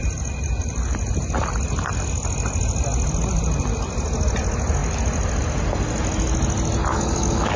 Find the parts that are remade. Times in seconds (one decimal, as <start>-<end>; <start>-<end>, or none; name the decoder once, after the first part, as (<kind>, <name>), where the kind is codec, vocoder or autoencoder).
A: 6.9-7.6 (codec, DAC)